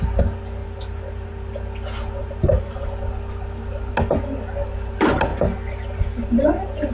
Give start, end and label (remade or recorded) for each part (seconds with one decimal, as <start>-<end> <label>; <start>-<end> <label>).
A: 0.0-0.6 recorded; 0.6-1.5 remade; 1.5-2.2 recorded; 2.2-2.9 remade; 2.9-5.3 recorded; 5.3-6.1 remade; 6.1-6.9 recorded